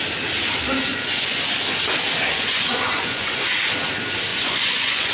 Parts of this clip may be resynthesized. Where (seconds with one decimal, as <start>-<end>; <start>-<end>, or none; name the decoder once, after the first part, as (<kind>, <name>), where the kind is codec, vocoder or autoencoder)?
0.9-1.4 (vocoder, Vocos); 2.3-3.6; 4.3-5.1